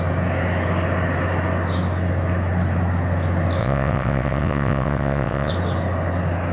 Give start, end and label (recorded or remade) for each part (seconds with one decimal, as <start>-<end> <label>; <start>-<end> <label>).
0.0-3.6 recorded; 3.6-5.5 remade; 5.5-6.5 recorded